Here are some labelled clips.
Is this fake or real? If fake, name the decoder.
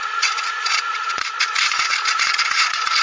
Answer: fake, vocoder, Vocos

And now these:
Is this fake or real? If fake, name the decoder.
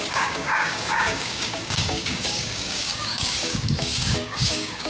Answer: fake, codec, DAC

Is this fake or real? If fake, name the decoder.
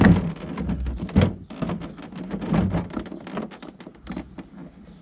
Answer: real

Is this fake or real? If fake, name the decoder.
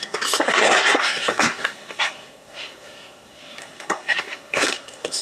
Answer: fake, codec, SNAC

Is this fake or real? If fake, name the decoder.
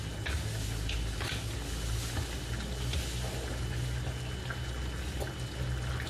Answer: real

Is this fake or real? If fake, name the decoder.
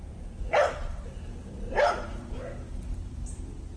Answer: fake, vocoder, BigVGAN v2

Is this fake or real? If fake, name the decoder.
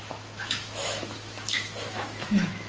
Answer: fake, autoencoder, DAC-VAE